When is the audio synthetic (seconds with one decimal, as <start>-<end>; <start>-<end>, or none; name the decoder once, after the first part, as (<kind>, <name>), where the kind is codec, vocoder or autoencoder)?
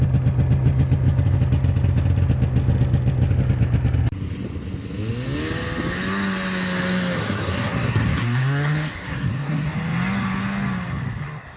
7.2-9.7 (codec, SNAC)